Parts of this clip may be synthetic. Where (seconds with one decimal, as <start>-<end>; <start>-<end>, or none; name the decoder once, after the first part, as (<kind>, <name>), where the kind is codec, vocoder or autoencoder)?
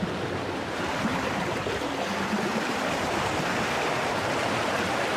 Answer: 2.1-5.2 (vocoder, BigVGAN v2)